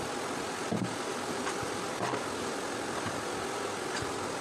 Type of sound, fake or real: fake